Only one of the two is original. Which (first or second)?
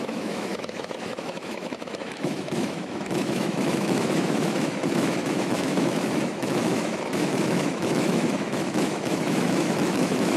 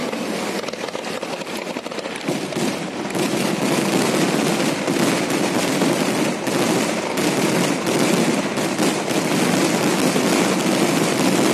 second